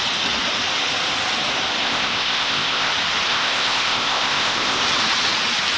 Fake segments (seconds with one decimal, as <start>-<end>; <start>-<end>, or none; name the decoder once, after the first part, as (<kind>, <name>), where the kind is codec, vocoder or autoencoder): 1.8-2.9 (codec, ZipCodec); 3.3-4.8